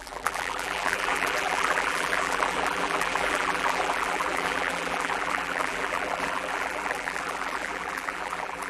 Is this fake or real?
fake